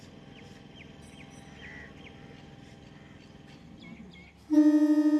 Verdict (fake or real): real